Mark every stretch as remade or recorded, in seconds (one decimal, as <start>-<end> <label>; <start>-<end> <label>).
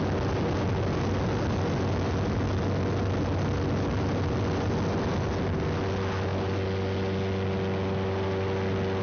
0.0-9.0 recorded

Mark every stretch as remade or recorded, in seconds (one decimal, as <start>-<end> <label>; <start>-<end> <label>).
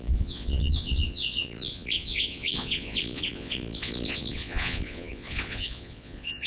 0.0-6.5 remade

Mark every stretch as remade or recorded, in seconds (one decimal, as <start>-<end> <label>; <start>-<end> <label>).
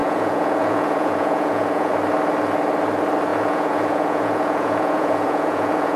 0.0-1.9 remade; 1.9-3.3 recorded; 3.3-6.0 remade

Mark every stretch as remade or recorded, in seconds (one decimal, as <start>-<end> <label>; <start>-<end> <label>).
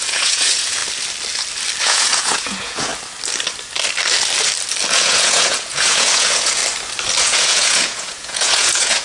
0.0-0.8 remade; 0.8-1.8 recorded; 1.8-2.9 remade; 2.9-4.9 recorded; 4.9-6.6 remade; 6.6-7.2 recorded; 7.2-9.0 remade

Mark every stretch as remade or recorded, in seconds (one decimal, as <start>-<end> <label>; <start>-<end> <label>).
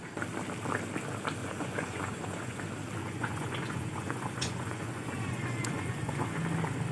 0.0-1.4 recorded; 1.4-2.6 remade; 2.6-3.0 recorded; 3.0-6.4 remade; 6.4-6.9 recorded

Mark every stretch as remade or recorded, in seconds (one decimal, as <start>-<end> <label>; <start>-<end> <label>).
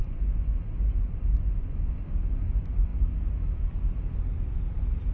0.0-1.9 remade; 1.9-5.1 recorded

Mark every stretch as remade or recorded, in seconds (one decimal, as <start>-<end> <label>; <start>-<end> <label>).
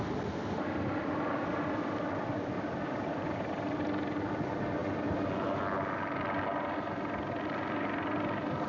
0.0-8.7 recorded